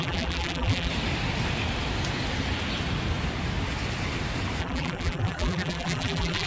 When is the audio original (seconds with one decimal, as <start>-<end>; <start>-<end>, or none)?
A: 0.9-4.6